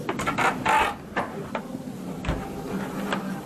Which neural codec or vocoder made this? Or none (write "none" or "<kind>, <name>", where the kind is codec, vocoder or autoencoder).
none